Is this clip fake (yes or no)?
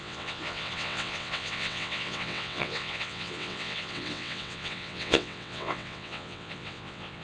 yes